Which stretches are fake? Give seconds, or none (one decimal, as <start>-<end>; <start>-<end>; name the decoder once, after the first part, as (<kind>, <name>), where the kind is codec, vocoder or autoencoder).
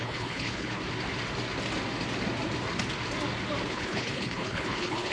0.0-0.8 (codec, HILCodec); 3.7-5.1